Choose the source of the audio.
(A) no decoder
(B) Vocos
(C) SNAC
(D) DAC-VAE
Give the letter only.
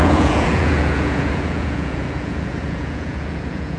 B